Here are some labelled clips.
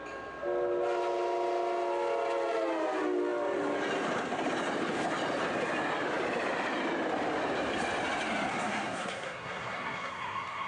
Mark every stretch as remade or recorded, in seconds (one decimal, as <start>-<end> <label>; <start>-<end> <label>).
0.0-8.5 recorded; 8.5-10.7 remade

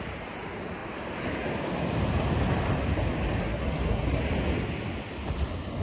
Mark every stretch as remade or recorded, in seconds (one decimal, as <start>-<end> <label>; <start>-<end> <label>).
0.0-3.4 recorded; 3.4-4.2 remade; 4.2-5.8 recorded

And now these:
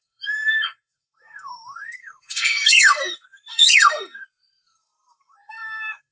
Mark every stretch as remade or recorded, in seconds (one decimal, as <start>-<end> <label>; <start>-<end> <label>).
0.0-6.1 remade

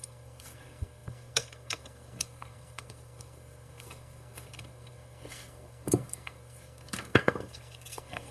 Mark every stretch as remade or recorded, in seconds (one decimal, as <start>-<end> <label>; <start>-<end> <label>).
0.0-8.3 remade